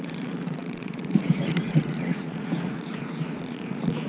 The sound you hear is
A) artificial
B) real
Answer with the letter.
A